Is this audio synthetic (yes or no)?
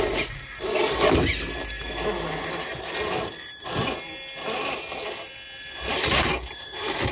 no